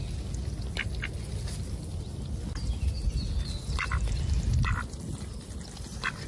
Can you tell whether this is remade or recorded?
recorded